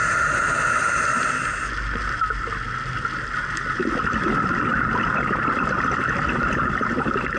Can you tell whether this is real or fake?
real